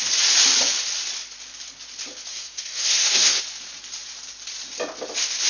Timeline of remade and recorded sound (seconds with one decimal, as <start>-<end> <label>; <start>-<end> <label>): 0.0-2.3 recorded; 2.3-3.4 remade; 3.4-5.5 recorded